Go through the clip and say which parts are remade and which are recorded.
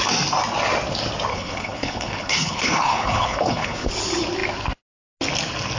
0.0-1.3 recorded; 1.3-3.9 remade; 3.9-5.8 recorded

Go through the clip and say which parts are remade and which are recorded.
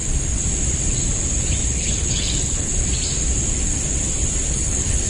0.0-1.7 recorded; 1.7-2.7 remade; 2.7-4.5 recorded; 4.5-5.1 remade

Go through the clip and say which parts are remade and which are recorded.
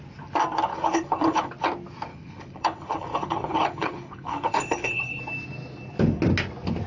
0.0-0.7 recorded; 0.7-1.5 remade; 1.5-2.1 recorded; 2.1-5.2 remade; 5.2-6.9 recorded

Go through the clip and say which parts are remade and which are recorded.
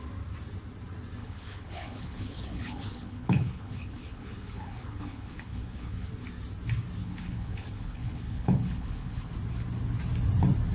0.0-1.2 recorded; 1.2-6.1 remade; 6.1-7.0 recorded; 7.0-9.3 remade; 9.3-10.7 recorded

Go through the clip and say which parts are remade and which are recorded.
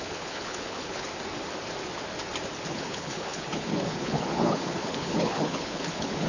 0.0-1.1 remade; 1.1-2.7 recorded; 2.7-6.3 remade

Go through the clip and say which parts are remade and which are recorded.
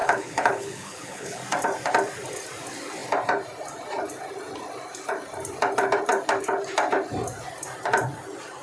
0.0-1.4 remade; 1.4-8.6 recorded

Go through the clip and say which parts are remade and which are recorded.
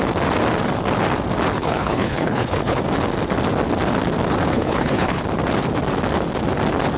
0.0-1.6 recorded; 1.6-2.8 remade; 2.8-4.5 recorded; 4.5-5.2 remade; 5.2-7.0 recorded